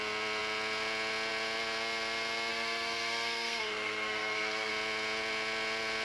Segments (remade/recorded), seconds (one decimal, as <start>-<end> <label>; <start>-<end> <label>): 0.0-2.5 recorded; 2.5-4.7 remade; 4.7-6.0 recorded